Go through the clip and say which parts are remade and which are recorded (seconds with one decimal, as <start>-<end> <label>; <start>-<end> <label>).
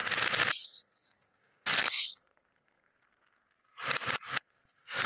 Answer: 0.0-0.6 recorded; 0.6-2.9 remade; 2.9-4.4 recorded; 4.4-5.1 remade